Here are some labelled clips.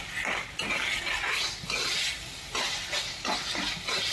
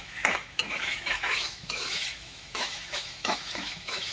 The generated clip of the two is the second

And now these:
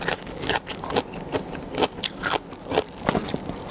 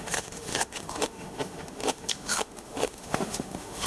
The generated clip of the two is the second